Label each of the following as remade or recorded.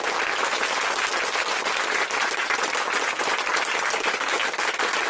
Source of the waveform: recorded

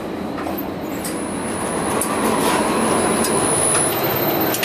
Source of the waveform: recorded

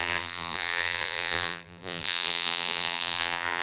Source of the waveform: remade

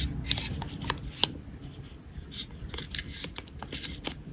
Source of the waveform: recorded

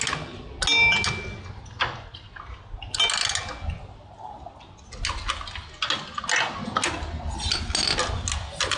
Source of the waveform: recorded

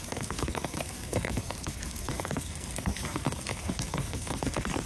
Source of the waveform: remade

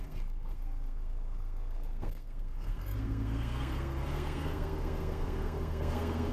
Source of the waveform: remade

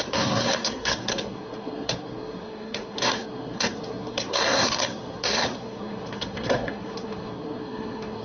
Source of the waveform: remade